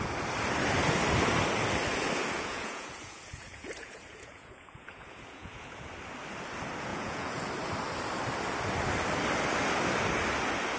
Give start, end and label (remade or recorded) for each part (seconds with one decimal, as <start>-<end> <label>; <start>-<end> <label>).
0.0-2.2 recorded; 2.2-5.9 remade; 5.9-6.9 recorded; 6.9-7.5 remade; 7.5-10.8 recorded